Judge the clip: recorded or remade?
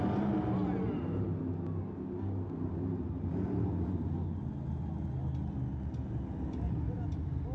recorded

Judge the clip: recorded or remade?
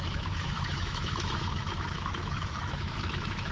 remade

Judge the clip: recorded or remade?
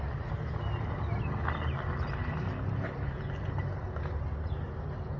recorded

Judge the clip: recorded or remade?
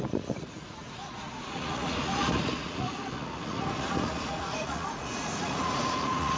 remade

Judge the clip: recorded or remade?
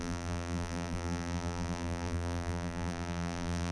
remade